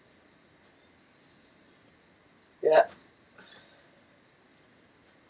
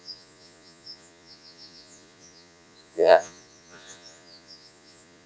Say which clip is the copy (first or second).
second